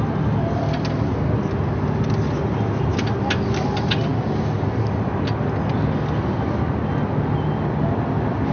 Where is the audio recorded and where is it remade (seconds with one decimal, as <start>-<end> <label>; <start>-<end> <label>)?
0.0-8.5 recorded